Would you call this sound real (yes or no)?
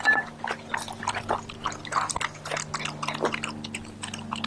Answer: yes